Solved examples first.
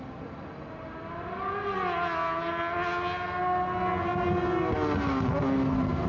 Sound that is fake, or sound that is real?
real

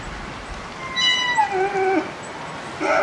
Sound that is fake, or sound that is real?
real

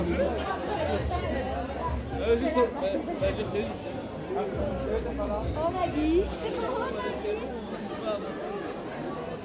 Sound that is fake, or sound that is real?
real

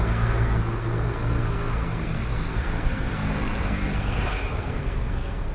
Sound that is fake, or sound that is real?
fake